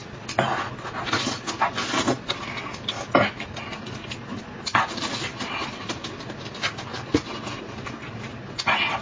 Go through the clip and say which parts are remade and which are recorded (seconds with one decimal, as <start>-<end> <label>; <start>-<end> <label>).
0.0-4.7 recorded; 4.7-5.8 remade; 5.8-9.0 recorded